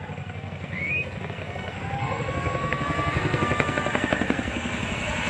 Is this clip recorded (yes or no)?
no